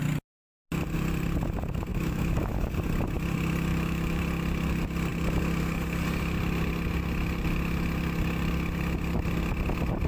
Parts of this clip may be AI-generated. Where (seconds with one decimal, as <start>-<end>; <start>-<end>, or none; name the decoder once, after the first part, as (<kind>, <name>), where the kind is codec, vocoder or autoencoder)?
1.9-2.7 (autoencoder, DAC-VAE); 3.7-4.2